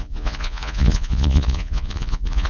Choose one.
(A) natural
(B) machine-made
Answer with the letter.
B